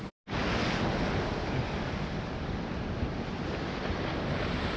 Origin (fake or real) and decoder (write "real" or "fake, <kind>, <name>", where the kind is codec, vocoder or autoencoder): real